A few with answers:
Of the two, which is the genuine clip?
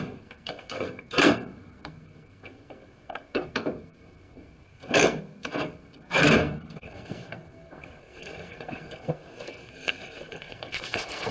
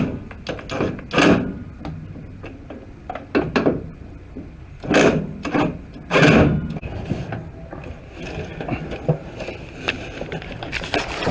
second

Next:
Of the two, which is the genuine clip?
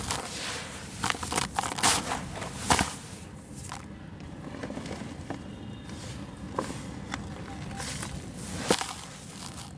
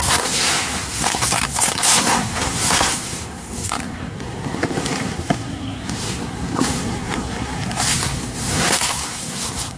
first